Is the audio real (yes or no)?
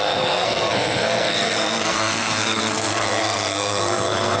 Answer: no